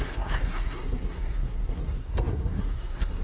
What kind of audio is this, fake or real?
fake